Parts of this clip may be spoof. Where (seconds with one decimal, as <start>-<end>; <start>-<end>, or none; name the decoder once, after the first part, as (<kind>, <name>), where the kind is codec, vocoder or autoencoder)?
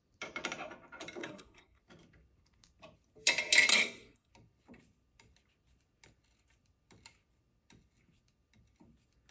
1.2-1.8 (codec, SNAC); 3.7-4.3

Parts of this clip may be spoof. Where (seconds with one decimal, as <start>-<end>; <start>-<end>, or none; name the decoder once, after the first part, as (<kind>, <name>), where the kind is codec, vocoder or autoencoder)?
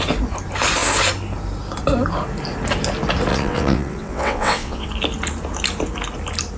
3.3-4.9 (vocoder, WaveNeXt)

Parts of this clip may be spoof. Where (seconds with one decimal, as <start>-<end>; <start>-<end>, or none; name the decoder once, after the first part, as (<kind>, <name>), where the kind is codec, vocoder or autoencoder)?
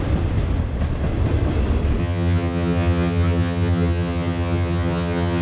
2.0-5.4 (vocoder, HiFi-GAN)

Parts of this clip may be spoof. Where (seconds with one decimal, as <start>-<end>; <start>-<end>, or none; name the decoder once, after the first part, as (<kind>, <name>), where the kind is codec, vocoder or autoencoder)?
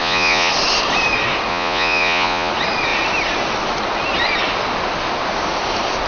0.0-0.5 (vocoder, Vocos); 1.5-2.5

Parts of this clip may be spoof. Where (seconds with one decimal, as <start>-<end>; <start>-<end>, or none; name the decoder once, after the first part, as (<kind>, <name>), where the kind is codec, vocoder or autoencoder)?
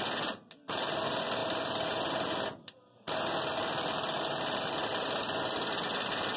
none